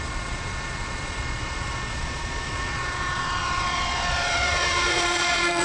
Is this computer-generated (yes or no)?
yes